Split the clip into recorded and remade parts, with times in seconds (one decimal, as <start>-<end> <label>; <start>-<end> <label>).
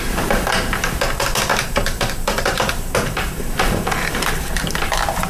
0.0-1.5 recorded; 1.5-4.7 remade; 4.7-5.3 recorded